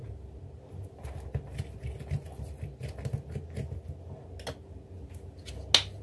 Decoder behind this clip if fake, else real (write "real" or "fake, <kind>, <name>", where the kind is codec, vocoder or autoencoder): real